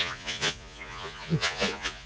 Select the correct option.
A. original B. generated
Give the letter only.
B